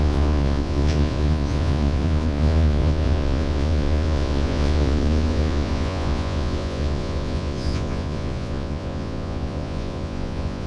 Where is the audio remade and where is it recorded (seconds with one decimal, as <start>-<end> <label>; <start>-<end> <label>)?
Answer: 0.0-10.7 remade